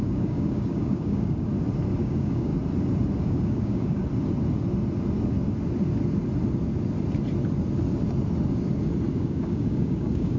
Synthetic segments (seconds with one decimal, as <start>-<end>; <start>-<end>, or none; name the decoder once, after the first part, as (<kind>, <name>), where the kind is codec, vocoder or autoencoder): 0.0-1.5 (codec, DAC); 2.0-2.5; 3.2-4.0; 9.1-10.4

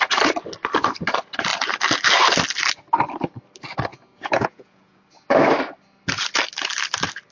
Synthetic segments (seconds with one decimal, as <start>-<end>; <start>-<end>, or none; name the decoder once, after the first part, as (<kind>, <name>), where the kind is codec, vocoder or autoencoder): 3.9-5.0 (vocoder, Vocos)